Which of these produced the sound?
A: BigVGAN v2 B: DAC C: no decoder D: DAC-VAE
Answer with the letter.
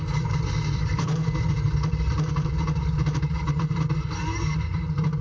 A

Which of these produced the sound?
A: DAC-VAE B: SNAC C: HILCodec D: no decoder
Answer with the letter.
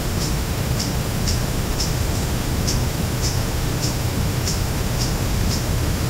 A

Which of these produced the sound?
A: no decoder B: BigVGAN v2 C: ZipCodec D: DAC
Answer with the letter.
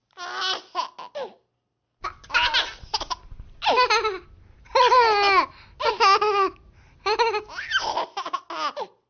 A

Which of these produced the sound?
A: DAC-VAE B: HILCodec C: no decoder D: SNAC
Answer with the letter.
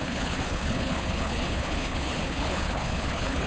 B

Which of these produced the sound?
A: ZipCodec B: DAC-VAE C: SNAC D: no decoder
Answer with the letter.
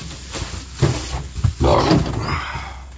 D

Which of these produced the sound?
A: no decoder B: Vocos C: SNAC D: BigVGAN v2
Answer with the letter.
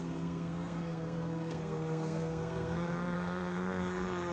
C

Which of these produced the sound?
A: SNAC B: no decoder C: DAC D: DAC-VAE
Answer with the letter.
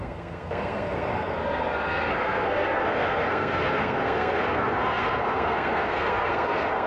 A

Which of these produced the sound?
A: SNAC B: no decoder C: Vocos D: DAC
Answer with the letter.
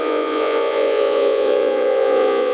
C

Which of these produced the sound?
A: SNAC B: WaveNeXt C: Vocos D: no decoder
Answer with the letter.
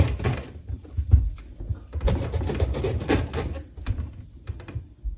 D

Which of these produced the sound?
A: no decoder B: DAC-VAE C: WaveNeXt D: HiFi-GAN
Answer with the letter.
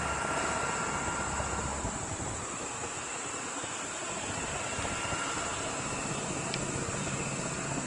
A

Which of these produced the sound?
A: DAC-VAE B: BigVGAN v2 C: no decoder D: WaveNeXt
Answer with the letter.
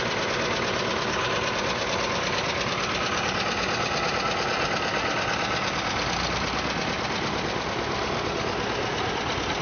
C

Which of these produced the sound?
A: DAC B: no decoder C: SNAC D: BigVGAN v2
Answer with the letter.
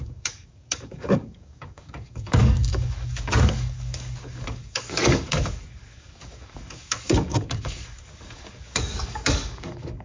A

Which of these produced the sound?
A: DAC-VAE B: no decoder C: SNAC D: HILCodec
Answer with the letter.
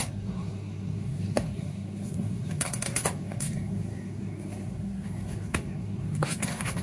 C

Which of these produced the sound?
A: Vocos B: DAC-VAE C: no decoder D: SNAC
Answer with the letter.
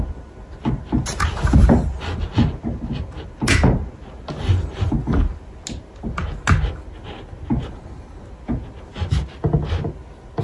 C